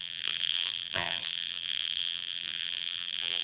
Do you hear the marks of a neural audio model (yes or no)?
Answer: yes